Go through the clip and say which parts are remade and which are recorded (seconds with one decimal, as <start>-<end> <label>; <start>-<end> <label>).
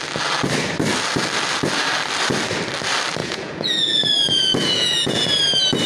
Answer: 0.0-3.2 recorded; 3.2-5.3 remade; 5.3-5.9 recorded